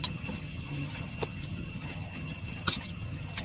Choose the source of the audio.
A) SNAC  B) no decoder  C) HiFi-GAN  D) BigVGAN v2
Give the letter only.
C